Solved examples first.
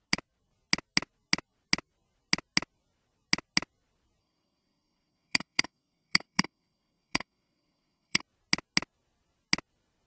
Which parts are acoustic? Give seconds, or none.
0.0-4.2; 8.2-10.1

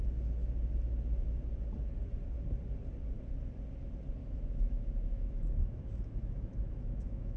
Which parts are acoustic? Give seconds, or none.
0.0-4.2

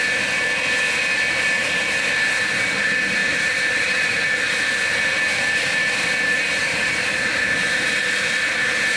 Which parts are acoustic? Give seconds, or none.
0.0-3.2; 4.2-6.6; 8.0-9.0

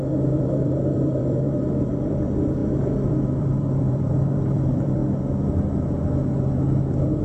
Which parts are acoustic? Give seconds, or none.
5.0-7.2

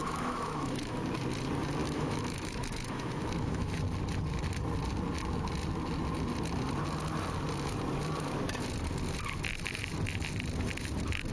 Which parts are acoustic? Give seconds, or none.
1.0-1.8; 3.8-11.3

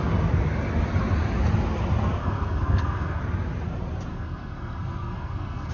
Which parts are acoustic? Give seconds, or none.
0.0-2.2; 3.2-4.1